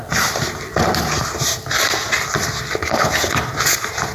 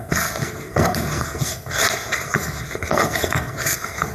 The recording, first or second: first